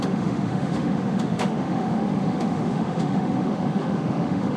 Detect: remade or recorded remade